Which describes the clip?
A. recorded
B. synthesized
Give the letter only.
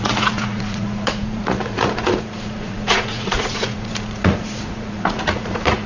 B